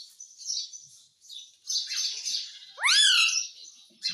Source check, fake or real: real